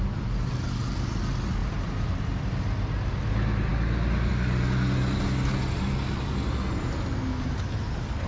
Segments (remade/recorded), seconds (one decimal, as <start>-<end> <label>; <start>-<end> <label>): 0.0-1.6 recorded; 1.6-2.5 remade; 2.5-8.3 recorded